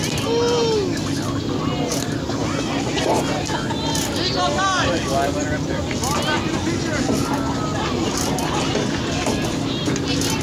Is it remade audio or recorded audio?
recorded